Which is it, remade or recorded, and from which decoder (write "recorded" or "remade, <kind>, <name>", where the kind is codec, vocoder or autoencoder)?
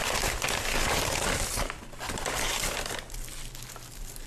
recorded